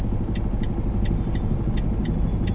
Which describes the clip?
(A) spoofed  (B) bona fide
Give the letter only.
B